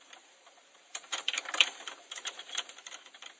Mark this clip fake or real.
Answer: fake